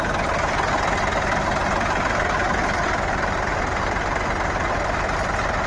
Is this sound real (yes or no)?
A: yes